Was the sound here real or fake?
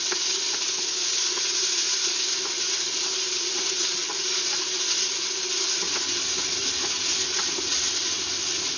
real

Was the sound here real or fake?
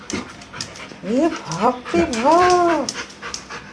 fake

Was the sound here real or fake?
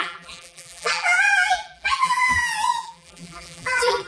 fake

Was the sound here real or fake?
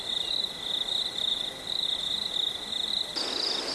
real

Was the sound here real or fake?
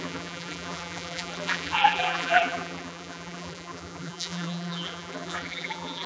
fake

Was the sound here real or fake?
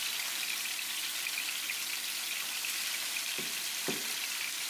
fake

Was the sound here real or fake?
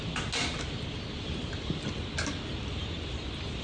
real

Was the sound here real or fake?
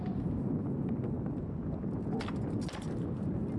real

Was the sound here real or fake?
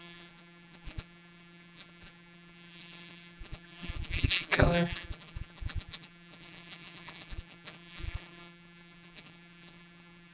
fake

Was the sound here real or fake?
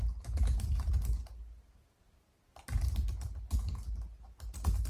real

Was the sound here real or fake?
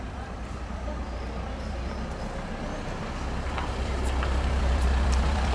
fake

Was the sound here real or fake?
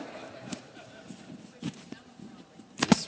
fake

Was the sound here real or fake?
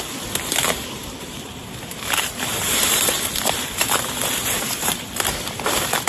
fake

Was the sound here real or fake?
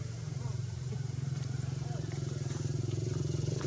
fake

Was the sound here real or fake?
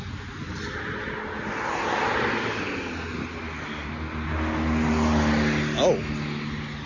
real